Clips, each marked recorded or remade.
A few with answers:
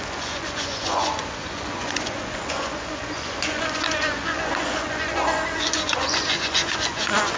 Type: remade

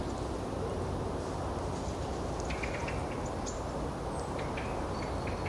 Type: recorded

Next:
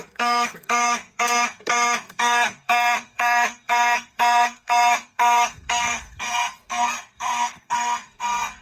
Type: remade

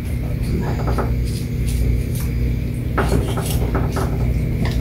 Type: recorded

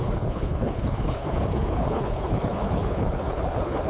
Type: remade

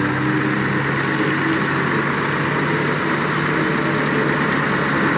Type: recorded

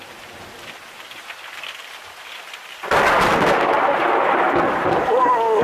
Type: recorded